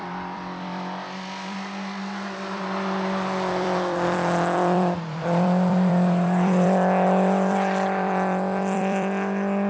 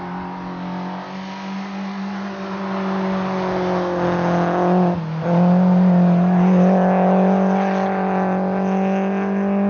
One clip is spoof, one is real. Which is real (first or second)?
second